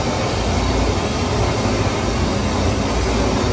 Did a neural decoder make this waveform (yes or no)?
no